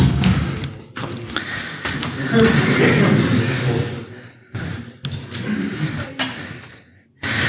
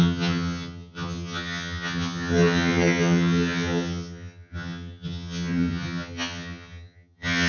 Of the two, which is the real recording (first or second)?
first